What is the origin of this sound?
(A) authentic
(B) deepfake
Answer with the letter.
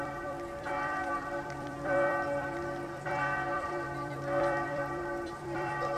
B